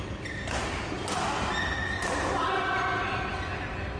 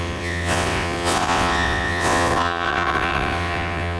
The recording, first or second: first